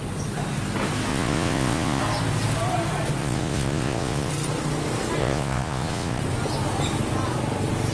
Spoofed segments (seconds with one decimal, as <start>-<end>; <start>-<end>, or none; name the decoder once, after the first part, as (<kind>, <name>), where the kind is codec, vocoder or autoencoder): 1.1-2.0 (vocoder, Vocos); 3.2-4.3; 5.2-6.2